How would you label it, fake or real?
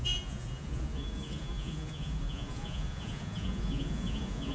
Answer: fake